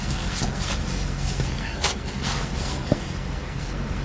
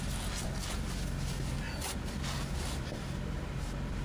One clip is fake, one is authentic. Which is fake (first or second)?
first